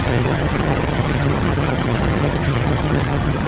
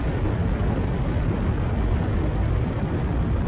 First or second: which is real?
second